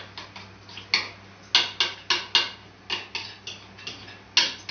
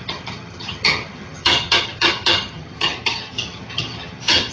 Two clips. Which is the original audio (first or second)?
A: first